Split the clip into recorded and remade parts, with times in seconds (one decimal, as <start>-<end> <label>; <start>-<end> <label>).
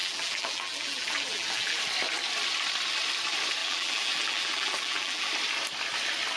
0.0-1.8 remade; 1.8-3.6 recorded; 3.6-5.3 remade; 5.3-6.4 recorded